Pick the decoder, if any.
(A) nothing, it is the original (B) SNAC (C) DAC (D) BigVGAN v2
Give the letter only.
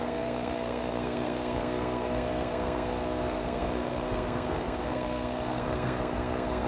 B